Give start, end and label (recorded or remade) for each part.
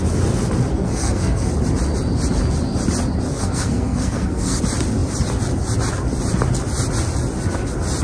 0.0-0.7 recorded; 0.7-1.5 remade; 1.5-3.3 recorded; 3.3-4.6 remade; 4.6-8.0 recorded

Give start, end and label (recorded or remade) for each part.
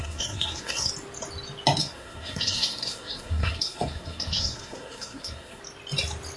0.0-0.9 remade; 0.9-1.8 recorded; 1.8-5.6 remade; 5.6-6.4 recorded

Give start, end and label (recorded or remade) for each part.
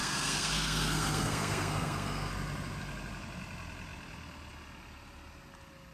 0.0-2.3 remade; 2.3-5.9 recorded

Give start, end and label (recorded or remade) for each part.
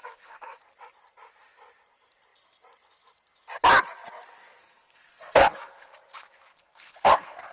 0.0-0.6 remade; 0.6-4.6 recorded; 4.6-5.9 remade; 5.9-6.5 recorded; 6.5-7.5 remade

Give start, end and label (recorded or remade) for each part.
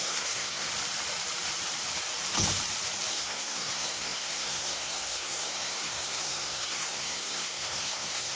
0.0-0.7 remade; 0.7-3.1 recorded; 3.1-8.4 remade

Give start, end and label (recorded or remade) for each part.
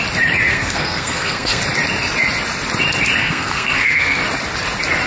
0.0-0.5 recorded; 0.5-1.6 remade; 1.6-3.2 recorded; 3.2-4.2 remade; 4.2-5.1 recorded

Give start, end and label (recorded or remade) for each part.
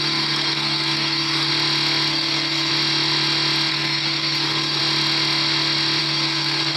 0.0-1.5 remade; 1.5-2.1 recorded; 2.1-2.7 remade; 2.7-3.7 recorded; 3.7-4.8 remade; 4.8-6.0 recorded; 6.0-6.8 remade